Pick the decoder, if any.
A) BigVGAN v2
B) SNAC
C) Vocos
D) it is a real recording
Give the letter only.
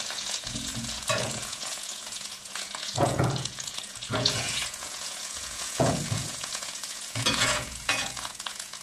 C